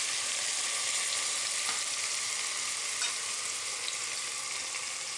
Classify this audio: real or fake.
real